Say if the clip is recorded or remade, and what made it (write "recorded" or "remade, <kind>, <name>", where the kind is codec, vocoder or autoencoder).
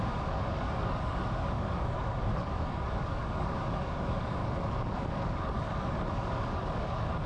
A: remade, codec, DAC